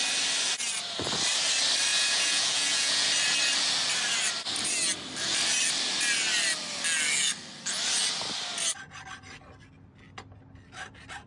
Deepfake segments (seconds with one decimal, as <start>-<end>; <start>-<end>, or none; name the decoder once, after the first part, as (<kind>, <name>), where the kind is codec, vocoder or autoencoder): 1.9-3.1 (vocoder, Vocos)